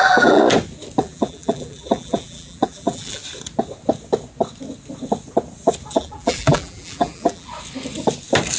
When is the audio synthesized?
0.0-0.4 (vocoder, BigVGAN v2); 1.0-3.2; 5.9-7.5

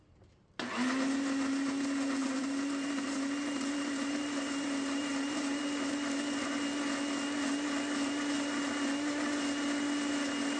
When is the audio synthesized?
2.2-6.5 (vocoder, BigVGAN v2)

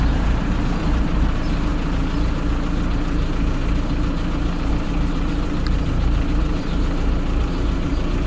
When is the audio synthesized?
0.0-1.7 (vocoder, BigVGAN v2); 4.7-8.3

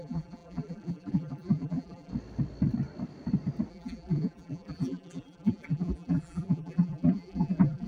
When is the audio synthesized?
0.0-2.1 (vocoder, BigVGAN v2); 3.7-7.9

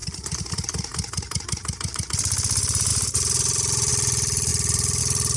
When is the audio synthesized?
0.0-0.5 (vocoder, BigVGAN v2); 2.9-3.9